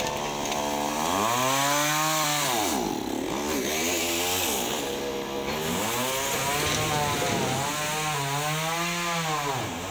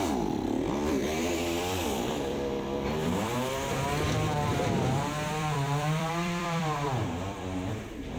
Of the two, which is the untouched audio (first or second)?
first